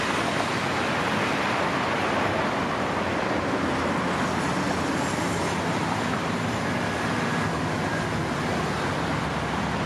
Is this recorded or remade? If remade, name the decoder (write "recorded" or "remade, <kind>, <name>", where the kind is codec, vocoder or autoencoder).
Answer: recorded